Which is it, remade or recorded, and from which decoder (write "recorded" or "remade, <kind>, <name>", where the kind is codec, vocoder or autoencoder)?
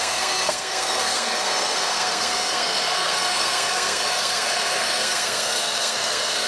remade, codec, SNAC